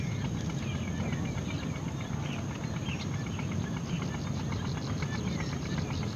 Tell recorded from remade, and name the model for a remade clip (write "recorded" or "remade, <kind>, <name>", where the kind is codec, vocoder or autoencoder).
recorded